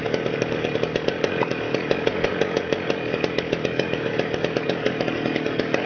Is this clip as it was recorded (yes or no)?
no